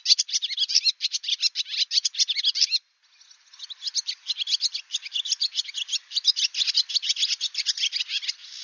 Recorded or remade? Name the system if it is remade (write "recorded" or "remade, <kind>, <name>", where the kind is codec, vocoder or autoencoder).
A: recorded